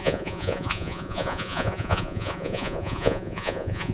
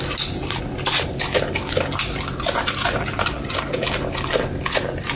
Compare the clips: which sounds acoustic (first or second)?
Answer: second